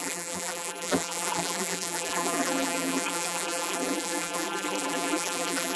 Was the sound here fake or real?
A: fake